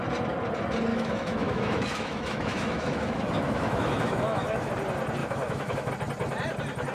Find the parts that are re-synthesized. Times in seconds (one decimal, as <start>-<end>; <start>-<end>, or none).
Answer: 0.9-4.7; 5.2-5.9